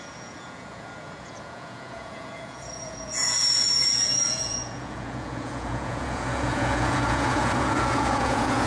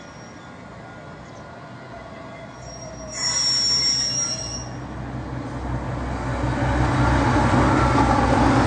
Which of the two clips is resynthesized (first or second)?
first